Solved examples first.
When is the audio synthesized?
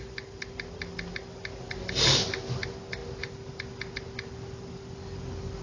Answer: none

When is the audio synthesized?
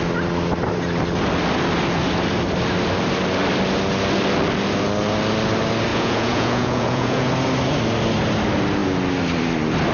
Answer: 5.9-7.3 (vocoder, Vocos)